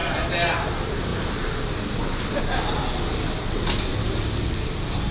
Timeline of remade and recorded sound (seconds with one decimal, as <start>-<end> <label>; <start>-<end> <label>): 0.0-5.1 recorded